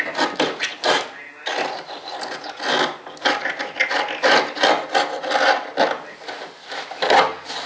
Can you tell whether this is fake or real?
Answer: real